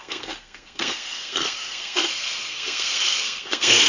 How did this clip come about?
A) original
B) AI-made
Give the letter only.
B